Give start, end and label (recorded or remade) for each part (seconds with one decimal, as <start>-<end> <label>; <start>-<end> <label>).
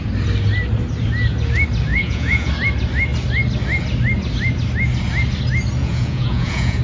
0.0-1.9 recorded; 1.9-2.5 remade; 2.5-5.8 recorded; 5.8-6.8 remade